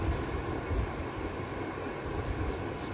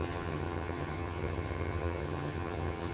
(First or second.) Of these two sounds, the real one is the first